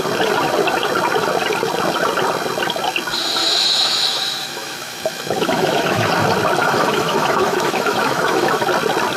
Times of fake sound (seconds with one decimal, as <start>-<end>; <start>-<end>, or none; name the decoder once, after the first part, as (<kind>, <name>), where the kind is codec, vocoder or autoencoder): 3.4-6.1 (autoencoder, DAC-VAE); 6.6-8.6